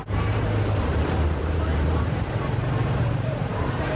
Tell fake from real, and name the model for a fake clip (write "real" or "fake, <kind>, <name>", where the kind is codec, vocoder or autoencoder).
fake, vocoder, BigVGAN v2